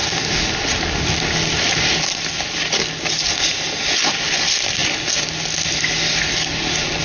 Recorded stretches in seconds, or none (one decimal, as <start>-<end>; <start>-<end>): 0.0-7.0